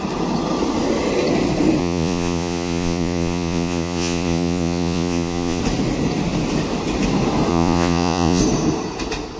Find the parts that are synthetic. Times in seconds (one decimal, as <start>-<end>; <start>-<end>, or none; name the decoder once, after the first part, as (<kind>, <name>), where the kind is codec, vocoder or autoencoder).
1.8-5.6 (vocoder, Vocos); 7.5-8.4